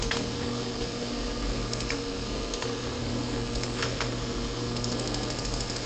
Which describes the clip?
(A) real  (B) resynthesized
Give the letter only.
B